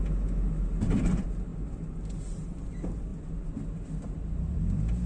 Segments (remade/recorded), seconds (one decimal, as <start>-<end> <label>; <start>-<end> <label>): 0.0-5.1 recorded